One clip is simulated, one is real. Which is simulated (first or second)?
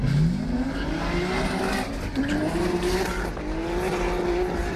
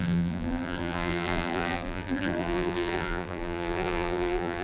second